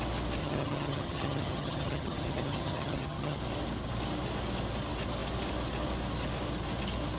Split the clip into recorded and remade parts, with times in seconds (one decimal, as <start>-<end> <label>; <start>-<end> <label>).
0.0-0.4 recorded; 0.4-3.4 remade; 3.4-7.2 recorded